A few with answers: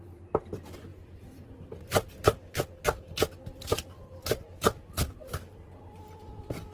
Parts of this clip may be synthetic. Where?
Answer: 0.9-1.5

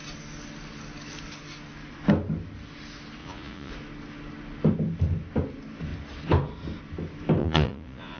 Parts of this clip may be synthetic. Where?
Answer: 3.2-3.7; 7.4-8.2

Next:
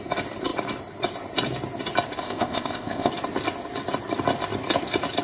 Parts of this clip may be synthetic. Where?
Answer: 2.2-3.1

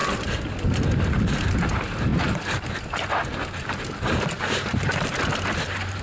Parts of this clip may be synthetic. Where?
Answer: none

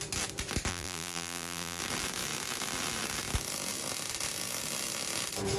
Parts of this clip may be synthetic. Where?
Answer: 0.7-1.8